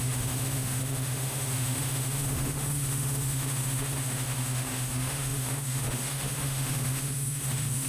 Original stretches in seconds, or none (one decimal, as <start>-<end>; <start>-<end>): none